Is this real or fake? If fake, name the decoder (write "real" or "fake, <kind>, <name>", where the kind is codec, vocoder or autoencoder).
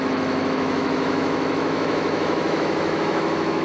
fake, autoencoder, DAC-VAE